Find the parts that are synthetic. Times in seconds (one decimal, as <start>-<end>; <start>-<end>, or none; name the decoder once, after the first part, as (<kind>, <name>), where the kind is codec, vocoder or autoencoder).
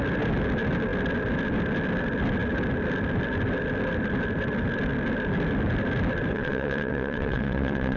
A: 6.3-8.0 (vocoder, WaveNeXt)